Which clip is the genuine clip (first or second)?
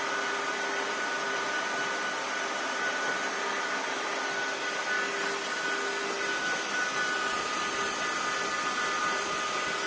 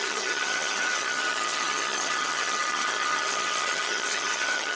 first